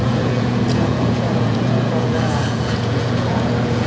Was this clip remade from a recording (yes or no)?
yes